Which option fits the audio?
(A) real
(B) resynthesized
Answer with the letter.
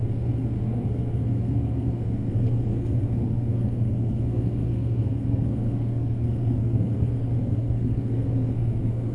B